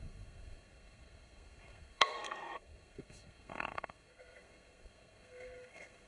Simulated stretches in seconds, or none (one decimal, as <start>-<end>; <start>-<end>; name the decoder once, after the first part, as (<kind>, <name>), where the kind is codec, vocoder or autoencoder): 0.0-6.1 (codec, SNAC)